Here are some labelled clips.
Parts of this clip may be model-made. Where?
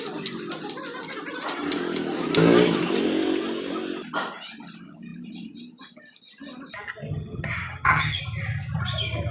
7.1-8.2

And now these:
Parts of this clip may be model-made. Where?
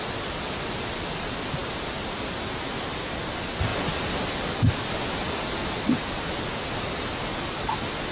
none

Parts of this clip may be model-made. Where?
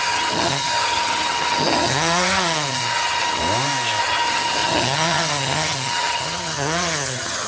0.0-3.4; 4.0-7.5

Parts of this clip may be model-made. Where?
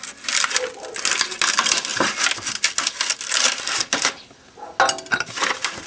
none